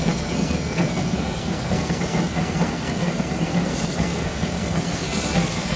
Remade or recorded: remade